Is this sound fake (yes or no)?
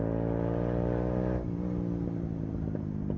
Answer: no